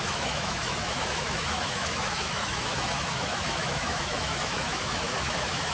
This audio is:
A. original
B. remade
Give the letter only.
B